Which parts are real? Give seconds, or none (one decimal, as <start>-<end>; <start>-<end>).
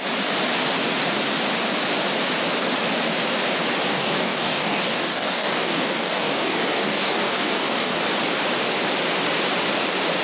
0.0-3.9; 8.0-10.2